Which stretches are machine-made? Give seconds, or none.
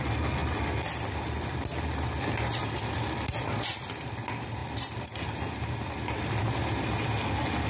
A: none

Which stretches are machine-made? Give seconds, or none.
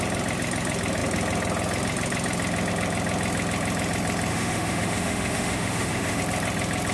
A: 4.3-6.2 (autoencoder, DAC-VAE)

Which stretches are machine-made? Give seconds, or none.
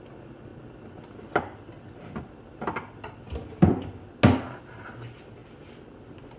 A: none